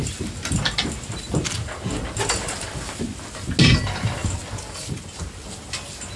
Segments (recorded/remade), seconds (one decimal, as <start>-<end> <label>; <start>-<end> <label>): 0.0-6.2 recorded